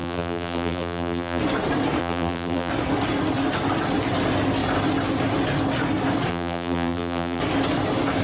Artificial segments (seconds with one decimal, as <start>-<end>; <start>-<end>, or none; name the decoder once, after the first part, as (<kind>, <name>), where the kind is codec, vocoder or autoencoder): 0.0-1.4 (vocoder, BigVGAN v2); 2.0-2.7; 6.3-7.4